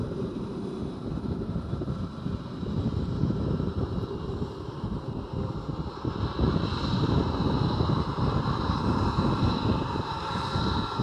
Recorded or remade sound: remade